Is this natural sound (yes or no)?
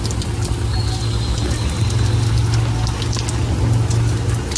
yes